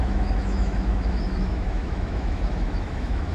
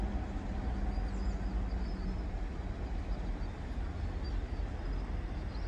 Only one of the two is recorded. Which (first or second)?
second